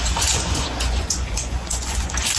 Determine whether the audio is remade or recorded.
remade